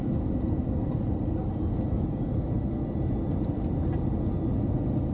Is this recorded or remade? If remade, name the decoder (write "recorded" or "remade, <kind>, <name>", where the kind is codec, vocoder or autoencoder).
recorded